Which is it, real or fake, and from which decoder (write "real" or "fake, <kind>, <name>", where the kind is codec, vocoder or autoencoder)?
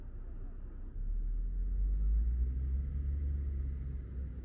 real